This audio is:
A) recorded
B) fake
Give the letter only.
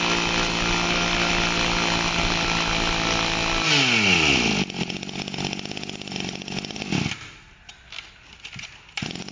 A